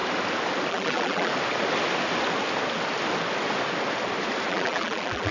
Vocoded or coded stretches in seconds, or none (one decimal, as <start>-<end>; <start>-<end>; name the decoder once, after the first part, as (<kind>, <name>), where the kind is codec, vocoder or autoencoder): 0.7-1.3 (vocoder, BigVGAN v2); 4.5-5.3